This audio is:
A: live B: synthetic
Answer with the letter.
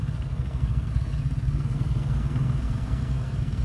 B